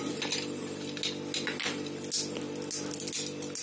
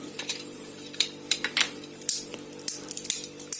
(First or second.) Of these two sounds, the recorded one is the first